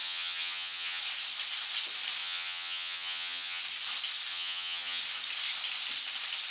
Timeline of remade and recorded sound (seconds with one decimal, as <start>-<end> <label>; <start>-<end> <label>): 0.0-1.0 remade; 1.0-2.2 recorded; 2.2-3.6 remade; 3.6-4.3 recorded; 4.3-5.0 remade; 5.0-6.5 recorded

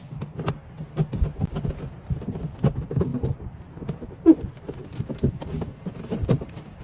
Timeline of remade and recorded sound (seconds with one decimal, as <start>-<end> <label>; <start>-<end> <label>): 0.0-3.1 recorded; 3.1-5.0 remade; 5.0-6.2 recorded; 6.2-6.8 remade